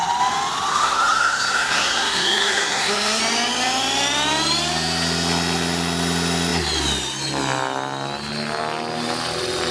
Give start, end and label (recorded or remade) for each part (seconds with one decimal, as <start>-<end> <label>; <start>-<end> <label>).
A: 0.0-0.7 recorded; 0.7-3.2 remade; 3.2-9.7 recorded